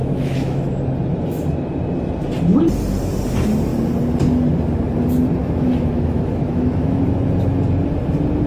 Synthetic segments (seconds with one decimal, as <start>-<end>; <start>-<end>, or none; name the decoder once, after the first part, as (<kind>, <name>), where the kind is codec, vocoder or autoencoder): 0.0-0.8 (autoencoder, DAC-VAE); 5.4-7.0